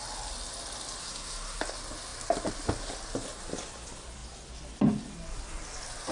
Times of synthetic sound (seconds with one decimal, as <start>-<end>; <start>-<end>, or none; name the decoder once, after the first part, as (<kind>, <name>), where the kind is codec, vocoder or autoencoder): 1.0-1.6 (codec, SNAC)